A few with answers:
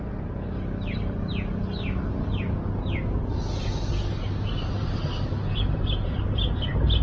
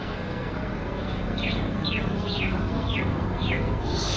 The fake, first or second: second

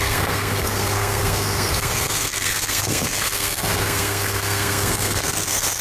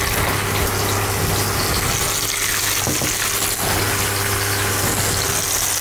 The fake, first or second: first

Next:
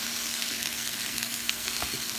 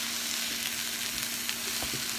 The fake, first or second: first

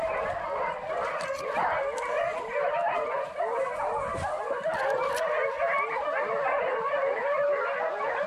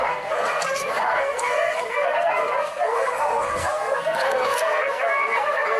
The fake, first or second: second